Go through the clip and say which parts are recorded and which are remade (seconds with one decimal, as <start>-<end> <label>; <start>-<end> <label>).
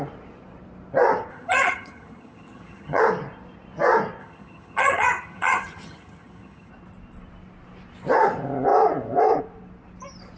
0.0-1.3 recorded; 1.3-3.0 remade; 3.0-4.2 recorded; 4.2-6.7 remade; 6.7-10.4 recorded